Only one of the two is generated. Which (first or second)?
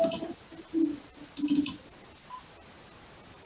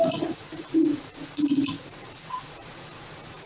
second